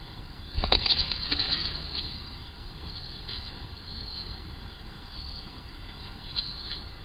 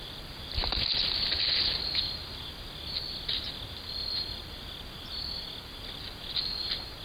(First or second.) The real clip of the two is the second